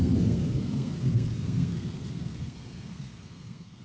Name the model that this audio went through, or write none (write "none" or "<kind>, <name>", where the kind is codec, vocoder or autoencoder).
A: codec, SNAC